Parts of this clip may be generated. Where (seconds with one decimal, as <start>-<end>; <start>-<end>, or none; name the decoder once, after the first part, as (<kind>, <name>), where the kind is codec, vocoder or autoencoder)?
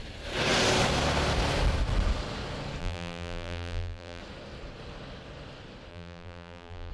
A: 2.8-4.2 (vocoder, BigVGAN v2); 5.9-6.9